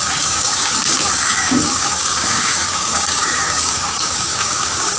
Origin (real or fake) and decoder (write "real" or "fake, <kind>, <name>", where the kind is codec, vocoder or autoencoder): fake, codec, DAC